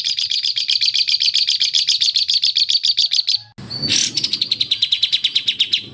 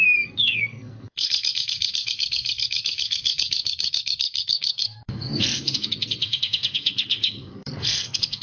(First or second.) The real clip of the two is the first